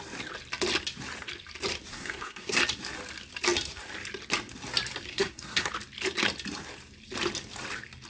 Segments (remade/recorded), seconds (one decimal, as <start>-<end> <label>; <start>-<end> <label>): 0.0-1.9 recorded; 1.9-2.6 remade; 2.6-5.1 recorded; 5.1-5.7 remade; 5.7-8.1 recorded